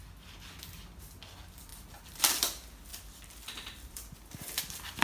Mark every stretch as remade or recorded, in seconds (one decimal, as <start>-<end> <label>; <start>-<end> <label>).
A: 0.0-2.9 recorded; 2.9-4.6 remade; 4.6-5.0 recorded